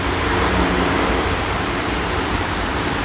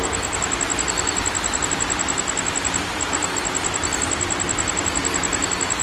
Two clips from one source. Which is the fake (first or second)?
first